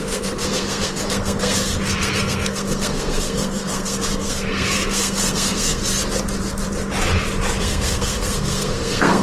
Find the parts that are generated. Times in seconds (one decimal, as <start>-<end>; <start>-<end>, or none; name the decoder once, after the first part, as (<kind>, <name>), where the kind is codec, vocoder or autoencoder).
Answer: 0.0-5.8 (codec, SNAC); 7.6-9.2